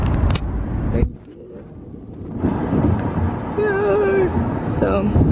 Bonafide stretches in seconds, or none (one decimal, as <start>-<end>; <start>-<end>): 0.0-4.3